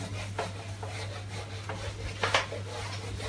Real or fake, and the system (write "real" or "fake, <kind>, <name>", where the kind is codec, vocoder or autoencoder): real